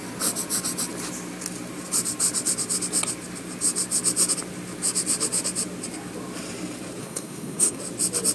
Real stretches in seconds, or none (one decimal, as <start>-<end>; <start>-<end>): 0.0-7.0; 7.8-8.3